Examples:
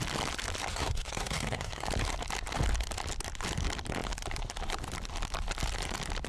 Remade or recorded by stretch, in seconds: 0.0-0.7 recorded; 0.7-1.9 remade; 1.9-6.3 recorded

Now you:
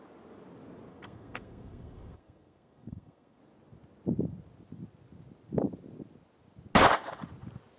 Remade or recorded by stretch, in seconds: 0.0-0.9 recorded; 0.9-3.4 remade; 3.4-7.8 recorded

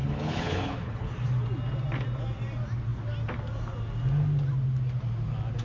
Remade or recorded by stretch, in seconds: 0.0-1.1 remade; 1.1-5.6 recorded

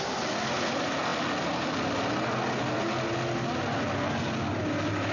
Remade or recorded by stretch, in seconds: 0.0-5.1 recorded

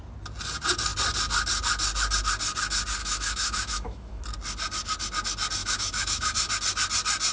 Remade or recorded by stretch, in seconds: 0.0-3.0 recorded; 3.0-4.2 remade; 4.2-5.6 recorded; 5.6-6.5 remade; 6.5-7.3 recorded